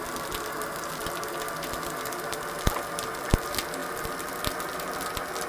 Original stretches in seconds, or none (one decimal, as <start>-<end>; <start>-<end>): 0.0-5.5